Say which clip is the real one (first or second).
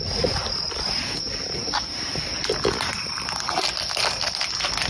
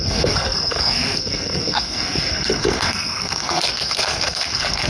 first